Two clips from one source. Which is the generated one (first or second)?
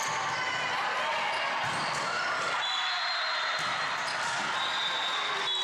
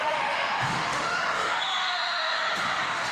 second